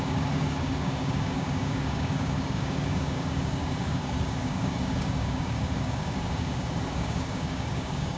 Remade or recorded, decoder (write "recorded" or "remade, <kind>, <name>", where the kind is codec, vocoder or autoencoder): remade, codec, DAC